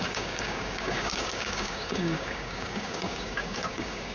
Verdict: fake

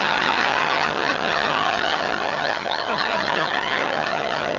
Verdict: fake